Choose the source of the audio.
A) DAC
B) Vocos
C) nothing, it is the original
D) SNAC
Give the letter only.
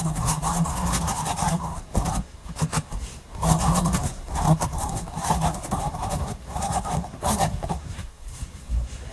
D